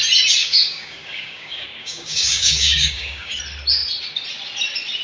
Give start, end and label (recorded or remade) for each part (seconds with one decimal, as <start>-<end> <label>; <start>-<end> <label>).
0.0-0.4 recorded; 0.4-3.4 remade; 3.4-5.0 recorded